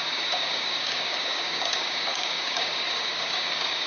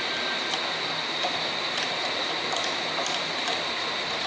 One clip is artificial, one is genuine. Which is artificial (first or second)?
first